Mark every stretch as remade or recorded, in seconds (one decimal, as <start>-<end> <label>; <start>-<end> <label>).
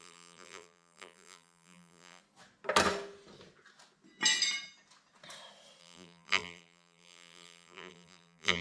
0.0-2.2 remade; 2.2-5.8 recorded; 5.8-8.6 remade